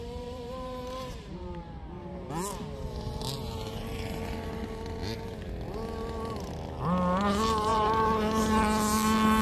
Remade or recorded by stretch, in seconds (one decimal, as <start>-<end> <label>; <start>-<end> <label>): 0.0-2.3 remade; 2.3-9.4 recorded